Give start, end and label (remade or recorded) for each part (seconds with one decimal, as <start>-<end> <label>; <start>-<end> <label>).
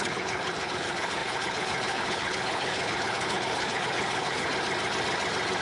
0.0-4.5 remade; 4.5-5.6 recorded